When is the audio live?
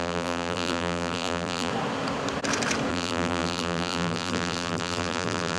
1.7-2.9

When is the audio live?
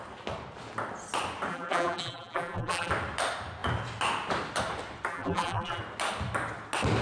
0.0-1.5; 2.9-5.1; 5.8-7.0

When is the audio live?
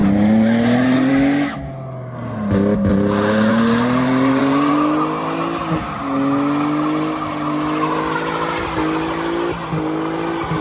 1.1-2.9; 4.7-10.6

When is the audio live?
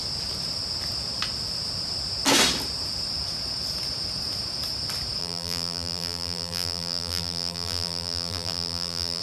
0.0-5.2